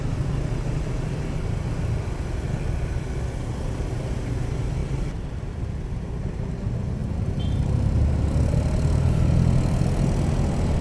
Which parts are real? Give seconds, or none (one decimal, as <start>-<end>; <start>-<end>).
0.0-4.8; 5.6-7.0; 8.1-10.8